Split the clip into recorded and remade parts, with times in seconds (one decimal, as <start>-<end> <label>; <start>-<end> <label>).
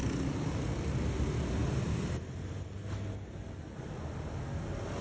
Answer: 0.0-5.0 recorded